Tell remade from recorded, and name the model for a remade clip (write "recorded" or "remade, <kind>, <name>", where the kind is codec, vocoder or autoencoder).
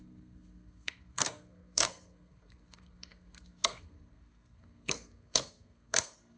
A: remade, codec, SNAC